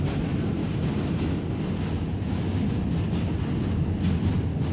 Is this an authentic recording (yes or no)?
yes